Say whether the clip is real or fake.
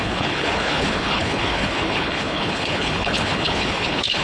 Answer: fake